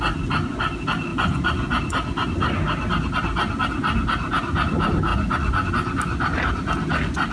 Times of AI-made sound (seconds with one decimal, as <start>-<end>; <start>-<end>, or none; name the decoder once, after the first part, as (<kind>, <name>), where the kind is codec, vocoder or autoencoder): 1.1-1.8 (vocoder, Vocos); 5.1-5.7